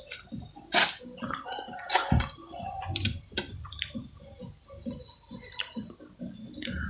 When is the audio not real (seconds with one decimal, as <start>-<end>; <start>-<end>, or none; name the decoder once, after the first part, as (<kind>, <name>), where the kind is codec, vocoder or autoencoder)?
2.4-3.2 (vocoder, Vocos)